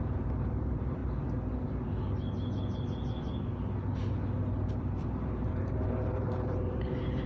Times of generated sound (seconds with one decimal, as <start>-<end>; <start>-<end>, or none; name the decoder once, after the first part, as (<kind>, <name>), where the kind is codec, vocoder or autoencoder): 0.0-1.0 (vocoder, BigVGAN v2); 4.8-7.3